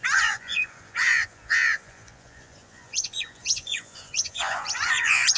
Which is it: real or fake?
fake